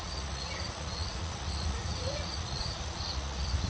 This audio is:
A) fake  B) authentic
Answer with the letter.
A